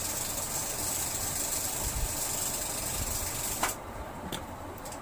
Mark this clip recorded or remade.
recorded